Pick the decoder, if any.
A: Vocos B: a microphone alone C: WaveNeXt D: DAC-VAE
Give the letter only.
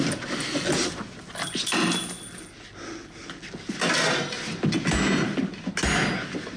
B